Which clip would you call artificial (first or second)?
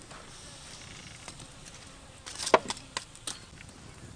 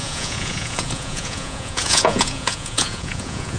second